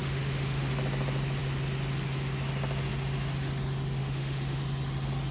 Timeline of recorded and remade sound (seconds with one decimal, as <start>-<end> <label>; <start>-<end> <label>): 0.0-0.7 remade; 0.7-4.0 recorded; 4.0-4.6 remade; 4.6-5.3 recorded